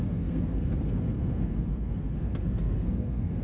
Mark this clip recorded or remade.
remade